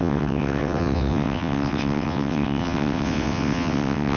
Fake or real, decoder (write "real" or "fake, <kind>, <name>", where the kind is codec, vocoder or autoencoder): fake, vocoder, WaveNeXt